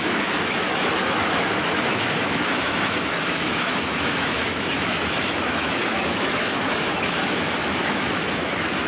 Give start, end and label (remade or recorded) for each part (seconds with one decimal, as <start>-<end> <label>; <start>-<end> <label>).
0.0-8.9 remade